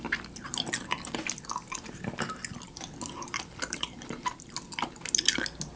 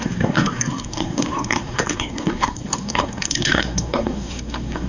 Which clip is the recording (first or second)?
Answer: first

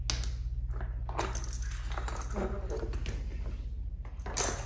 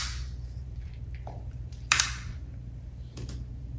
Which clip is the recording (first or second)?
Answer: first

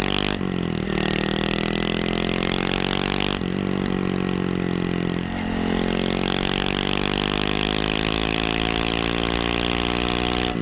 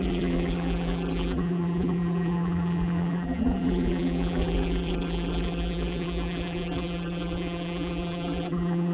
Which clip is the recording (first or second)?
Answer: first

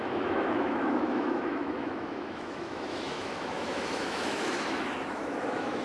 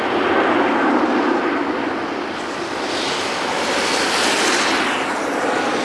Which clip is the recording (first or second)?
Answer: second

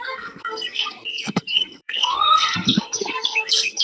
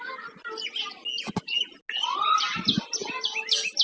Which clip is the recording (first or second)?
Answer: second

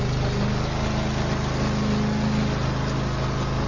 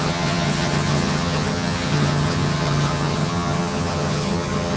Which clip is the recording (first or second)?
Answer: first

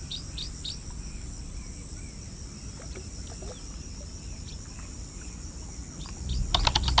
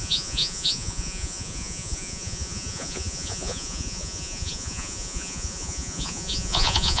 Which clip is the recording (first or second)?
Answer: first